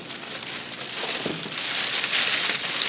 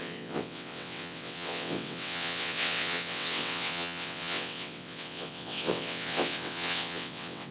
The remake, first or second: second